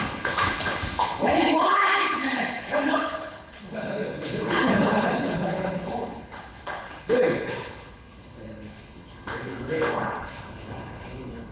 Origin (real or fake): fake